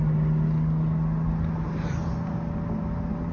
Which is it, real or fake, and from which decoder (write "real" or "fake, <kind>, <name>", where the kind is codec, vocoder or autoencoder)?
real